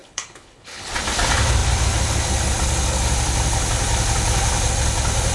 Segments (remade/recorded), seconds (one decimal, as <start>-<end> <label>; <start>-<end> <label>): 0.0-0.9 remade; 0.9-5.3 recorded